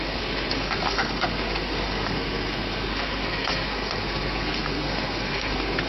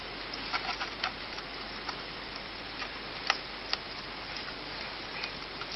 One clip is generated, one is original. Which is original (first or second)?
second